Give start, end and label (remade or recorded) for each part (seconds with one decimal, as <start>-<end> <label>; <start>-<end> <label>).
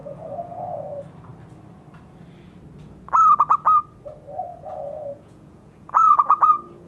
0.0-0.8 remade; 0.8-4.5 recorded; 4.5-6.9 remade